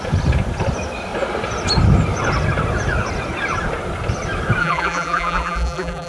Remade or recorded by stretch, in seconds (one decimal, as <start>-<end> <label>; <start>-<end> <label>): 0.0-4.6 recorded; 4.6-6.1 remade

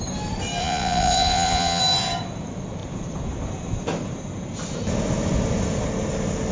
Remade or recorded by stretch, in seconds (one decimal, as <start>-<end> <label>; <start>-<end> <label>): 0.0-0.6 recorded; 0.6-1.8 remade; 1.8-6.5 recorded